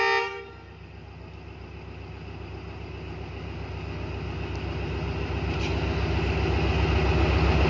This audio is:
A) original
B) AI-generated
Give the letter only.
A